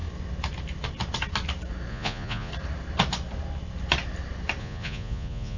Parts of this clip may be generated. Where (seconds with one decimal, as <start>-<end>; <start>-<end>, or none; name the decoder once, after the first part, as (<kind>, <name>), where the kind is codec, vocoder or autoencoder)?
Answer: 1.9-2.5 (vocoder, Vocos); 4.6-5.6